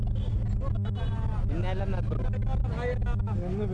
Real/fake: real